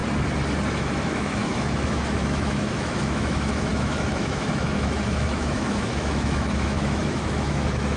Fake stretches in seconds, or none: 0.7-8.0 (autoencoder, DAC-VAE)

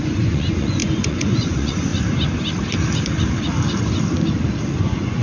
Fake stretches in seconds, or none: 0.0-1.9 (vocoder, Vocos); 4.6-5.2